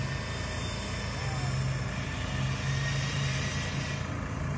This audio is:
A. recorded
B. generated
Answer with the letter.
A